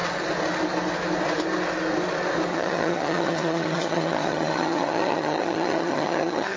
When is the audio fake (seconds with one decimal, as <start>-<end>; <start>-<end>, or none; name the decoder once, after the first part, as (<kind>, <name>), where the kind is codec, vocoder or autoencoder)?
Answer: 2.5-6.6 (vocoder, HiFi-GAN)